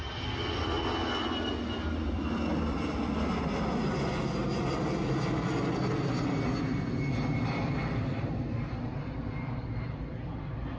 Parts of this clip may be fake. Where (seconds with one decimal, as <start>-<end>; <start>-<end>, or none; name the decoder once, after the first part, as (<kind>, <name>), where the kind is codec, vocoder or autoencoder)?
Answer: 7.8-8.6 (vocoder, BigVGAN v2)